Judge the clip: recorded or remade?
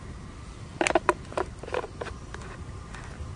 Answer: recorded